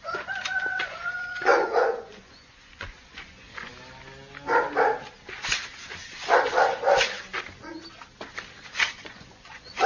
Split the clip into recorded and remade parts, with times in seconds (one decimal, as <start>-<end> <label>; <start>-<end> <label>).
0.0-3.7 remade; 3.7-8.9 recorded; 8.9-9.9 remade